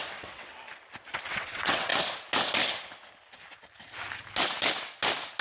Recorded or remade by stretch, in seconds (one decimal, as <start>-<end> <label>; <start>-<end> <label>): 0.0-0.5 remade; 0.5-1.3 recorded; 1.3-1.9 remade; 1.9-5.4 recorded